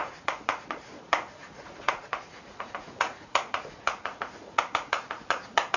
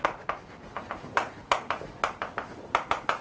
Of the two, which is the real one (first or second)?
second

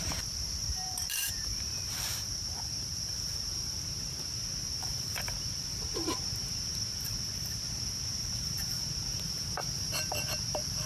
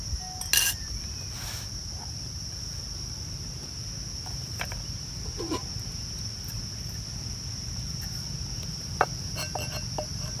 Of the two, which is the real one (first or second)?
second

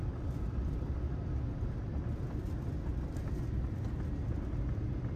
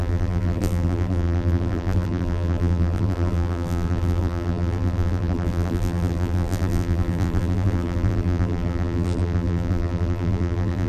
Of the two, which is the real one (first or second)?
first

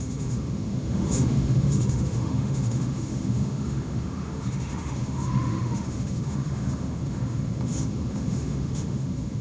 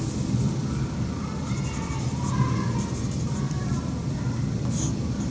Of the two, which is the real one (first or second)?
second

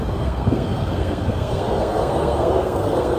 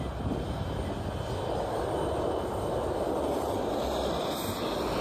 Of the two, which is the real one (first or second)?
second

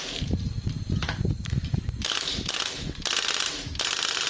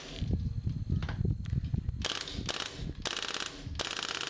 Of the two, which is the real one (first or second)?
second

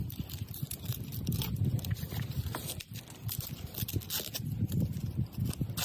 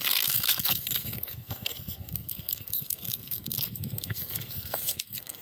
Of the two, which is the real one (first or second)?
first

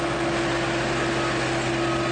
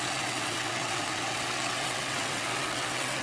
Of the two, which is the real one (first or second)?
first